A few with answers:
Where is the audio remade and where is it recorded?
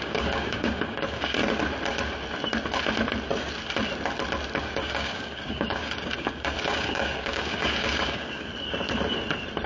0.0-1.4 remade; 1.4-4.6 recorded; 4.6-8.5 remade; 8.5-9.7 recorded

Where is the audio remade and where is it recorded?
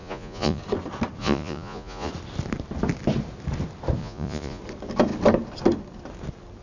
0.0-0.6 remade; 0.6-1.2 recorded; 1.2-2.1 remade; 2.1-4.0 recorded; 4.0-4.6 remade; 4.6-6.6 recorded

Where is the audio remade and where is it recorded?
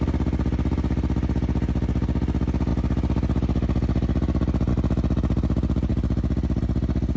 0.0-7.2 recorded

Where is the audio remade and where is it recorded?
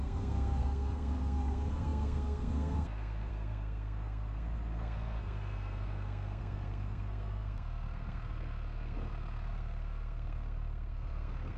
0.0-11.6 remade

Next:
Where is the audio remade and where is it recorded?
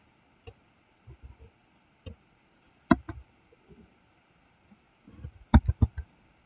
0.0-6.5 recorded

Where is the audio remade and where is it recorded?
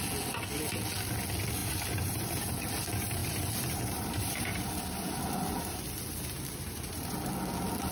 0.0-1.6 recorded; 1.6-2.4 remade; 2.4-3.2 recorded; 3.2-7.3 remade; 7.3-7.9 recorded